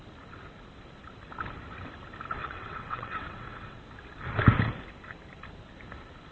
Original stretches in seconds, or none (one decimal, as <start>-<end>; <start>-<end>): 0.0-2.4; 3.8-6.3